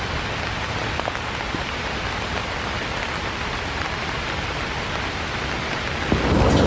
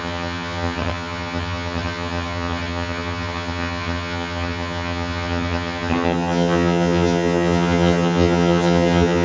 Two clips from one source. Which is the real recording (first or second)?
first